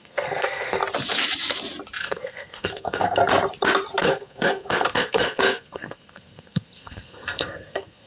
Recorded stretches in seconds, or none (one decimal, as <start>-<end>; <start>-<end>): 0.8-2.0; 3.2-4.0